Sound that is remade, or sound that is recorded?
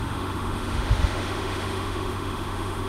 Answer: remade